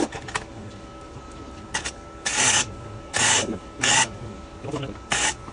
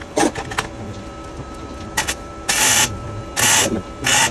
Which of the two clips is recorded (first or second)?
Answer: second